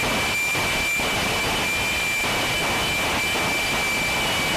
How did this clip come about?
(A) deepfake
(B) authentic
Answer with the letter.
B